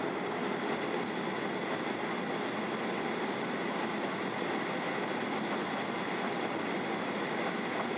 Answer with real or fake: real